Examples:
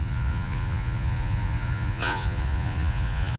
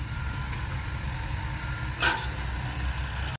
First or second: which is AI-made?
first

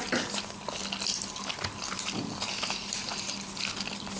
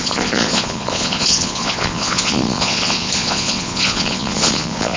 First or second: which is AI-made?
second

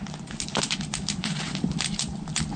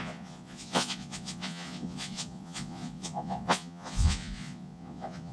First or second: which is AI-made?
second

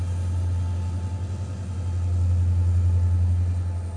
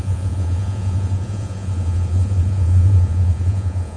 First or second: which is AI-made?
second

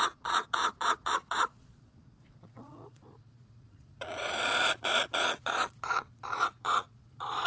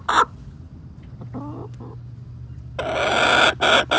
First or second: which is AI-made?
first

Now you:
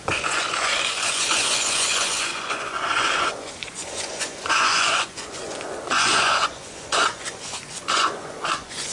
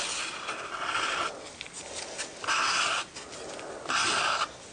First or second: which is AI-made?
first